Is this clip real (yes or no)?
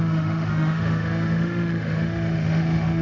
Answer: no